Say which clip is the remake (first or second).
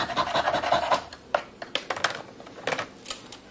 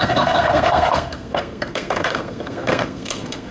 second